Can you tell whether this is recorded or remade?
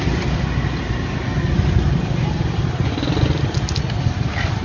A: recorded